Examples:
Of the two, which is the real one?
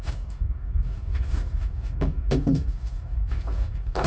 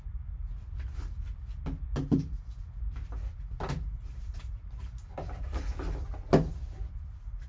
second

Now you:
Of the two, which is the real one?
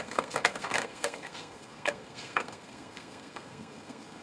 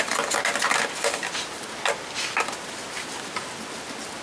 second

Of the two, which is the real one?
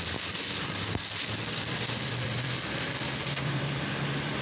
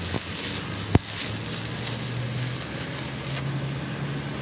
second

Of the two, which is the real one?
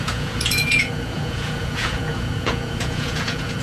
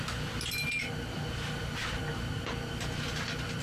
second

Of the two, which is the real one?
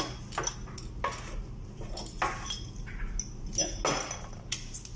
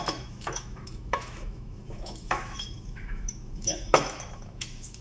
first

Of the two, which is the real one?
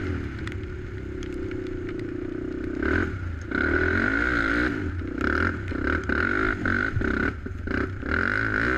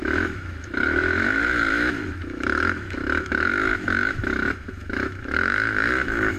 first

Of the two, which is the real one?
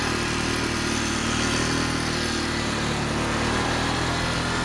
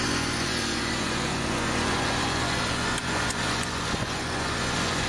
first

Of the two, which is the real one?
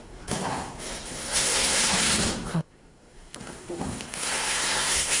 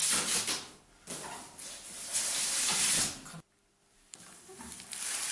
second